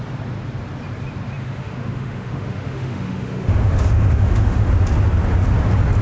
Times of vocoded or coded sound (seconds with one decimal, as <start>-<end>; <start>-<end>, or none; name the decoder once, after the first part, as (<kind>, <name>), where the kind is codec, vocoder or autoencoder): 1.4-4.7 (autoencoder, DAC-VAE)